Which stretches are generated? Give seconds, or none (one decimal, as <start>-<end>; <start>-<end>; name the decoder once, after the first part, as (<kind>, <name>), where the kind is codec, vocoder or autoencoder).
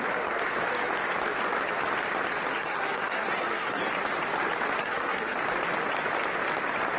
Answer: 2.5-3.8 (codec, SNAC); 4.8-5.4